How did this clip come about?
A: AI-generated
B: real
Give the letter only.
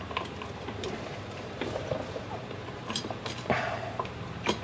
A